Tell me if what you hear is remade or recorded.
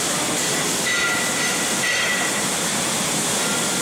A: recorded